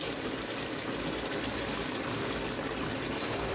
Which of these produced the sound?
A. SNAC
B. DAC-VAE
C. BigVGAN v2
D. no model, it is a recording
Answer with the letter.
D